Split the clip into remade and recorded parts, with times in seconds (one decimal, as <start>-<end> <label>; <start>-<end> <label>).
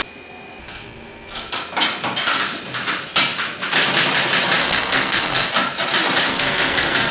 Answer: 0.0-0.6 recorded; 0.6-1.5 remade; 1.5-4.6 recorded; 4.6-5.5 remade; 5.5-6.3 recorded; 6.3-7.1 remade